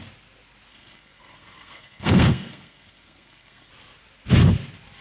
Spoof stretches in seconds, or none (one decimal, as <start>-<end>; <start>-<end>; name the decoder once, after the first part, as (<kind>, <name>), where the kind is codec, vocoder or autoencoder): 0.7-3.7 (codec, SNAC)